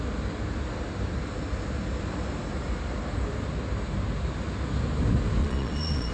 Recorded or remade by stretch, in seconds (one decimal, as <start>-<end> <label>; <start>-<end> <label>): 0.0-5.4 recorded; 5.4-6.1 remade